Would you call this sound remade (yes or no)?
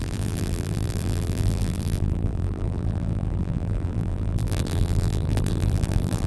yes